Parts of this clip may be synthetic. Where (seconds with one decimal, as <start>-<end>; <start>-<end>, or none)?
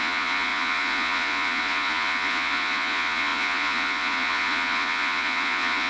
0.0-5.9